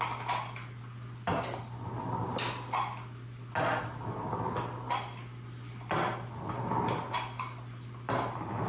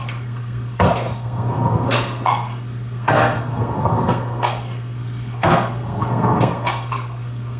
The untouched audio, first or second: first